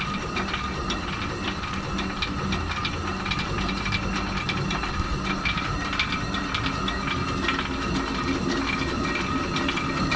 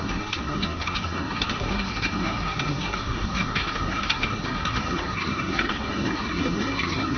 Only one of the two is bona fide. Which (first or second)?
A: first